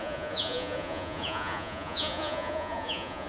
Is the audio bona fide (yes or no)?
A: no